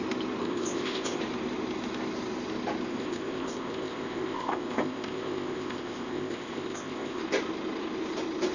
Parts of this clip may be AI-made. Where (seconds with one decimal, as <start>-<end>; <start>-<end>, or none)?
0.4-1.2; 2.9-7.2